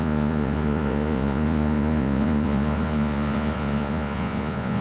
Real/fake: fake